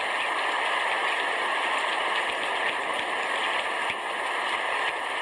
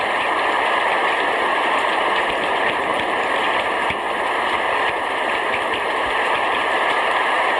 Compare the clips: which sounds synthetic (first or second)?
second